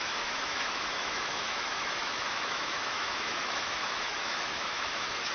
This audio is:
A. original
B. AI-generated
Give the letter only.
B